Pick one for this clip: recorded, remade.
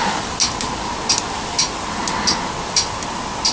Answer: recorded